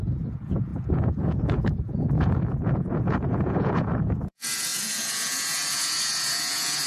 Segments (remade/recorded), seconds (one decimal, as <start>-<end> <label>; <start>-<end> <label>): 0.0-6.9 remade